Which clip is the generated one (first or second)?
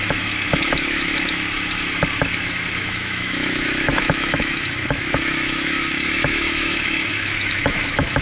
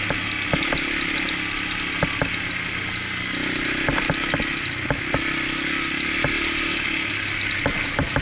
first